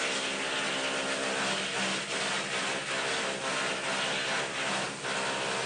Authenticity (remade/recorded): recorded